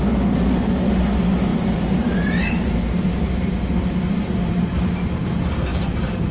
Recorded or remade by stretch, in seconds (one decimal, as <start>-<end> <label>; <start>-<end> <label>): 0.0-1.5 recorded; 1.5-5.3 remade; 5.3-5.7 recorded; 5.7-6.3 remade